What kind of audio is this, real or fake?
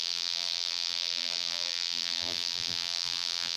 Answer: fake